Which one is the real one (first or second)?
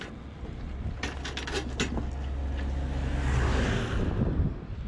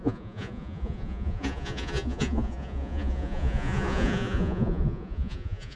first